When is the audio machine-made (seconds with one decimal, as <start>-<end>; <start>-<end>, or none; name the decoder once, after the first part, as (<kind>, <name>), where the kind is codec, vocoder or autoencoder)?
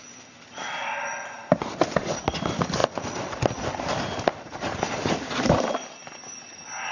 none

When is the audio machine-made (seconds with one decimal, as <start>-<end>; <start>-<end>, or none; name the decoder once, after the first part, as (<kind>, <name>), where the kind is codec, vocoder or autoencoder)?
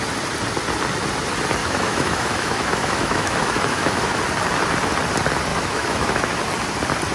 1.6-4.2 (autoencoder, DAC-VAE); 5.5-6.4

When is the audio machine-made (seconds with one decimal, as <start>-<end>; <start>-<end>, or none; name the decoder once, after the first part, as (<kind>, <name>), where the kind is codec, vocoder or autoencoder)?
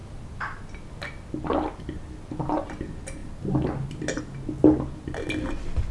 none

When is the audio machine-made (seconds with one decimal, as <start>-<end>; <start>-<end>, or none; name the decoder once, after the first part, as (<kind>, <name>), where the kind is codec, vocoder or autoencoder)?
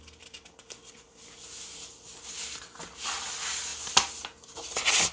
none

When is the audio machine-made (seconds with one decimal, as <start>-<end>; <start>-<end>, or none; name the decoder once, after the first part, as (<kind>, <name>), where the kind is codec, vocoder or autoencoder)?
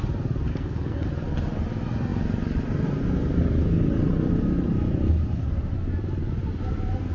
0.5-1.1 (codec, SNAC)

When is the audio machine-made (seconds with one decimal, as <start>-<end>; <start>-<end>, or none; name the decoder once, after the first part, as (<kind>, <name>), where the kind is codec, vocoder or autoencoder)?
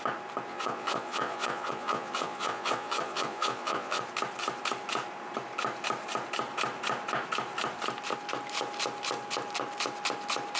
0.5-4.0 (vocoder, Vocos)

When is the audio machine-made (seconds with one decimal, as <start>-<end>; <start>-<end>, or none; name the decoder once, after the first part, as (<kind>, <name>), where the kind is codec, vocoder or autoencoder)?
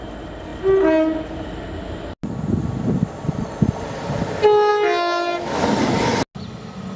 none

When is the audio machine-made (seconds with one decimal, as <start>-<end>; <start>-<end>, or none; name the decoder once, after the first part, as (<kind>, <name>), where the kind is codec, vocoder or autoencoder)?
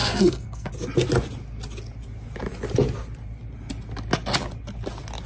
0.0-0.7 (codec, SNAC)